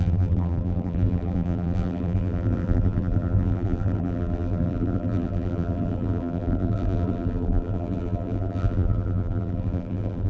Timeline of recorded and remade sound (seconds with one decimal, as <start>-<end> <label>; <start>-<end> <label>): 0.0-10.3 remade